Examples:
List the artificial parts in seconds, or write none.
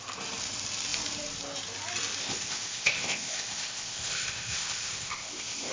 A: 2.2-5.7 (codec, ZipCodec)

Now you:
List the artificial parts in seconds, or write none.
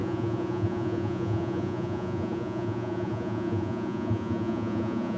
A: 0.0-5.2 (vocoder, Vocos)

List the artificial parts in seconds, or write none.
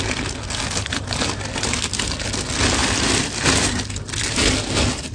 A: none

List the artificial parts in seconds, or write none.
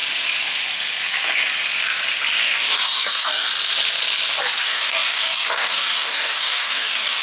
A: 2.4-3.5 (codec, DAC); 4.6-7.2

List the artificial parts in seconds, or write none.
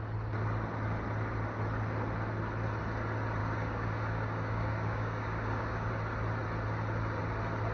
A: 3.4-5.9 (codec, DAC)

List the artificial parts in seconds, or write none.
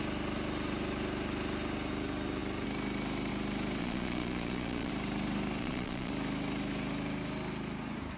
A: 3.8-4.9 (vocoder, Vocos); 5.6-6.1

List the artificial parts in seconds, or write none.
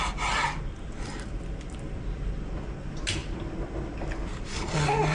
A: none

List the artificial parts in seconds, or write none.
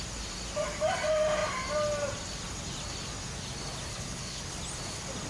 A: 3.9-4.4 (codec, HILCodec)